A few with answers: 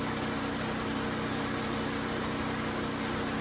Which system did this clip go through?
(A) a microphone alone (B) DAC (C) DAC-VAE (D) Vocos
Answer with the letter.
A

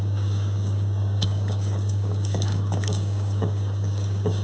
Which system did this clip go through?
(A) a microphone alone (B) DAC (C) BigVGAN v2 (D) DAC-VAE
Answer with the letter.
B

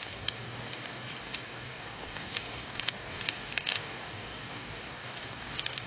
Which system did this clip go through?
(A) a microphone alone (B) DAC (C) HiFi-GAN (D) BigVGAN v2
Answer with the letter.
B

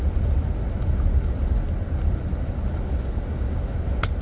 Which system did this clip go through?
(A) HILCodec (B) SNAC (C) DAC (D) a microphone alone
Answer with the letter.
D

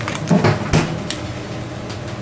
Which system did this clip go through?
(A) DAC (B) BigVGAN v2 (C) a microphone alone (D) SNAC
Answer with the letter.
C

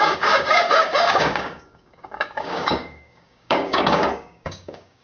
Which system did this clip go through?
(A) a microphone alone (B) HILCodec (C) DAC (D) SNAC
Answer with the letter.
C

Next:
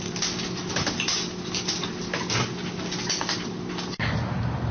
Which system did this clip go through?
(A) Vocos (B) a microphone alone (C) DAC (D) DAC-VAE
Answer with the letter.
B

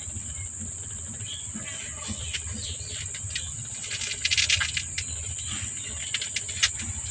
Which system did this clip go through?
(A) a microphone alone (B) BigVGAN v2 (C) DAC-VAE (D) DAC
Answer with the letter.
A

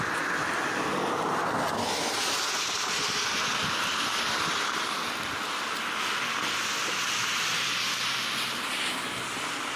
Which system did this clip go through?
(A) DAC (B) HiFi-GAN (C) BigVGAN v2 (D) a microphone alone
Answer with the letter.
D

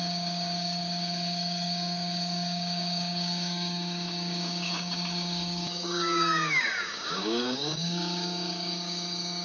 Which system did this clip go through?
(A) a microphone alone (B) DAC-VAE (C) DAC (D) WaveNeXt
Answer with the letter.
C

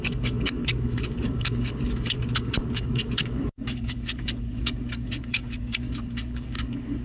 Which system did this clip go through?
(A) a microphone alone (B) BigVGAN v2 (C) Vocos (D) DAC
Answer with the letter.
D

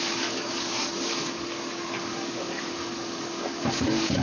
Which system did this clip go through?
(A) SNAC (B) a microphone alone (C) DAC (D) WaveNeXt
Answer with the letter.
C